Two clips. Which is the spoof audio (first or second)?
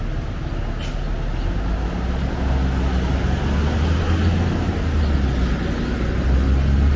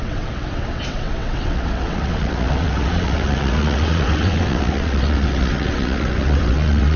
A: second